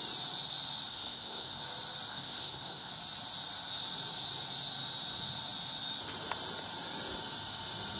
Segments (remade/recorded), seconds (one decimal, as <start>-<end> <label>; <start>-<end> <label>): 0.0-0.9 recorded; 0.9-1.6 remade; 1.6-2.1 recorded; 2.1-2.9 remade; 2.9-8.0 recorded